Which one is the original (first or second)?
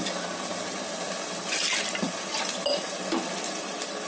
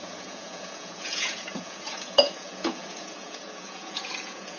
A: first